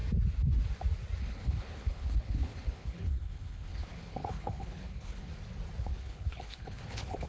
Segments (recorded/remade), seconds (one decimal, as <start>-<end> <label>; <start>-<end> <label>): 0.0-1.2 recorded; 1.2-5.3 remade; 5.3-5.8 recorded; 5.8-7.3 remade